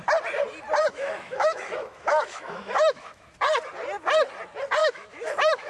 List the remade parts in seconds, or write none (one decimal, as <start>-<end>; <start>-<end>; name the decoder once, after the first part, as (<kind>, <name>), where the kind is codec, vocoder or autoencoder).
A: 0.9-3.3 (autoencoder, DAC-VAE); 4.8-5.7